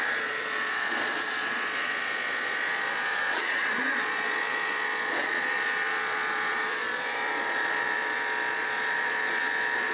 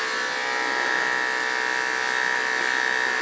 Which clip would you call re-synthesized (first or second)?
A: first